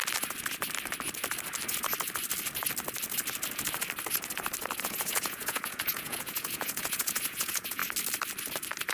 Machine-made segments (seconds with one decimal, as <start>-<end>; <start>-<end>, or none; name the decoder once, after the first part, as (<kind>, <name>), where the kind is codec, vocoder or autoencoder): 4.8-7.8 (vocoder, Vocos)